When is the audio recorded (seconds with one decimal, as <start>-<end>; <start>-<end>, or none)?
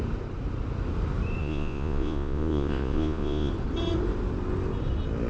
0.0-1.4; 3.5-5.3